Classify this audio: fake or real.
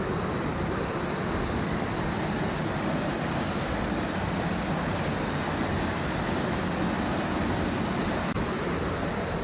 real